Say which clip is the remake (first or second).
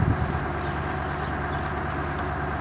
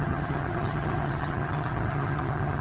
second